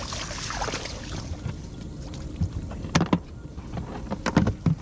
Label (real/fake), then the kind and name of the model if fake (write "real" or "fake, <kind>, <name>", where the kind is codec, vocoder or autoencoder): real